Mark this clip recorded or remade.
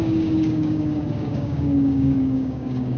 remade